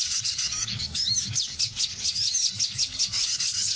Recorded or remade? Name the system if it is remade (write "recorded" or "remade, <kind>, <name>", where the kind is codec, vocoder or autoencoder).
remade, codec, DAC